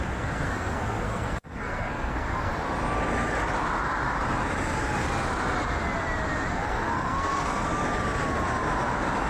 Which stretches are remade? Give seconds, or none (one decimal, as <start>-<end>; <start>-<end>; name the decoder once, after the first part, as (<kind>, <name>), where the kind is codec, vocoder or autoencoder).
0.0-2.5 (codec, SNAC); 6.5-7.7